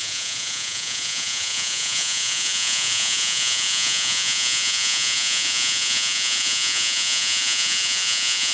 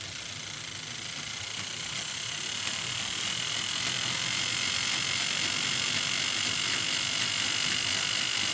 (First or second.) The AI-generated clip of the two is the first